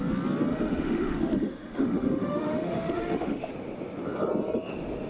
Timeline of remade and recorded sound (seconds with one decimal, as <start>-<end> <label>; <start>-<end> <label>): 0.0-0.5 recorded; 0.5-3.5 remade; 3.5-5.1 recorded